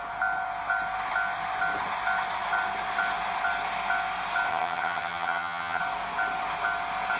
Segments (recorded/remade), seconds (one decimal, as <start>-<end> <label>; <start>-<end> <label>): 0.0-4.5 recorded; 4.5-5.8 remade; 5.8-7.2 recorded